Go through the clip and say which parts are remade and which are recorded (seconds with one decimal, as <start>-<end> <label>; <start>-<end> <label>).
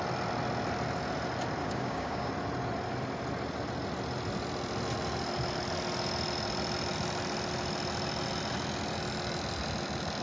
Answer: 0.0-1.6 recorded; 1.6-2.3 remade; 2.3-10.2 recorded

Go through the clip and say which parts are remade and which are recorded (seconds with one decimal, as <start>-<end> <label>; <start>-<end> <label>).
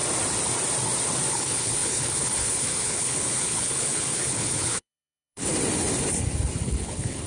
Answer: 0.0-1.3 recorded; 1.3-5.5 remade; 5.5-6.6 recorded; 6.6-7.3 remade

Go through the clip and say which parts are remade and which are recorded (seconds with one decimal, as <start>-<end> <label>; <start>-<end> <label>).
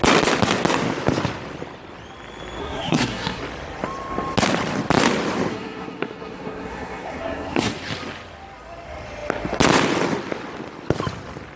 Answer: 0.0-2.6 recorded; 2.6-3.4 remade; 3.4-5.5 recorded; 5.5-7.7 remade; 7.7-11.6 recorded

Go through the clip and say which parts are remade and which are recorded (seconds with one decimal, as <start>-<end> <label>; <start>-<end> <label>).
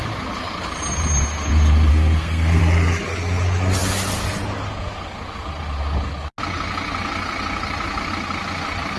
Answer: 0.0-1.9 recorded; 1.9-2.6 remade; 2.6-9.0 recorded